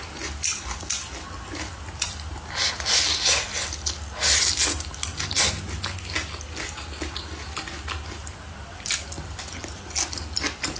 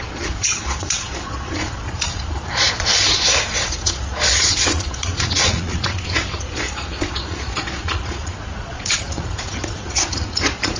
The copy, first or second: second